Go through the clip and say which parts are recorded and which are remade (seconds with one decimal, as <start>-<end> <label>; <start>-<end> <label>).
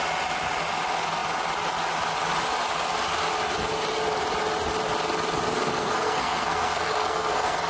0.0-5.7 recorded; 5.7-7.7 remade